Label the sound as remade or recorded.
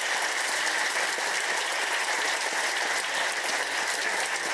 recorded